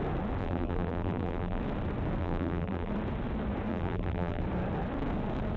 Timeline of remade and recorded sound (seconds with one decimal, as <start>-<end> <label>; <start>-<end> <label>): 0.0-0.4 recorded; 0.4-1.6 remade; 1.6-2.2 recorded; 2.2-2.9 remade; 2.9-3.7 recorded; 3.7-4.4 remade; 4.4-5.6 recorded